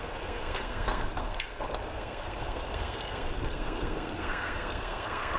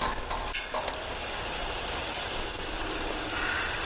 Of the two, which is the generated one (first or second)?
first